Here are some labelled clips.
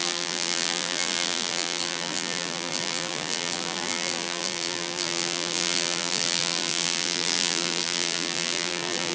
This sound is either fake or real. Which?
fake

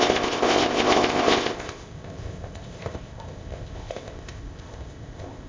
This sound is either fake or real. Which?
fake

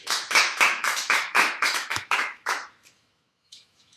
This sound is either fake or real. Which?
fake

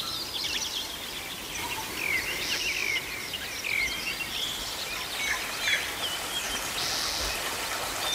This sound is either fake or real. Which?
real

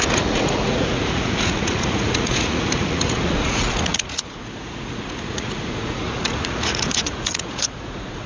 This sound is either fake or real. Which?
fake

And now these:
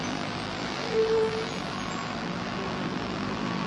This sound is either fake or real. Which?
fake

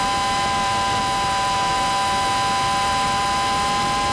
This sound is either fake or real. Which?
real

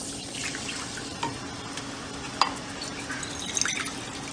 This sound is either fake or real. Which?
real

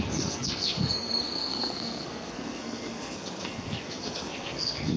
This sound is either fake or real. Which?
fake